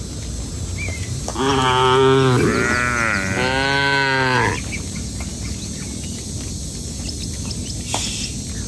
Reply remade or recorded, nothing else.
recorded